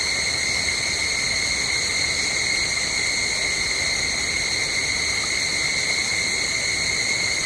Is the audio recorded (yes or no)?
yes